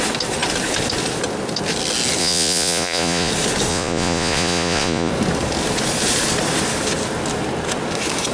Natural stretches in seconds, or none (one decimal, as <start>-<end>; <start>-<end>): 0.0-2.2; 3.3-3.7; 5.1-8.3